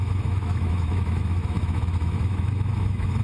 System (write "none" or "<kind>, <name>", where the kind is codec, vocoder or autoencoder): autoencoder, DAC-VAE